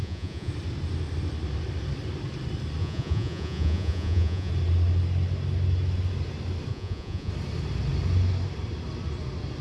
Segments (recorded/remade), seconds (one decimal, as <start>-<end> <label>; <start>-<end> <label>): 0.0-0.5 remade; 0.5-2.8 recorded; 2.8-4.5 remade; 4.5-6.7 recorded; 6.7-7.3 remade; 7.3-9.6 recorded